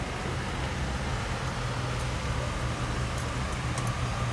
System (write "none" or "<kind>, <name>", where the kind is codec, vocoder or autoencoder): none